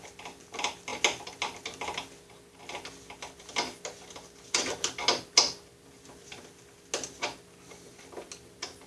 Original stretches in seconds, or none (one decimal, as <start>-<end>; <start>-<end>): 0.0-8.9